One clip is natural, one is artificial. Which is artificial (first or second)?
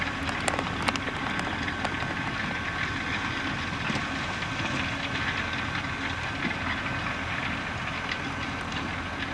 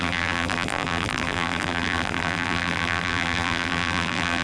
second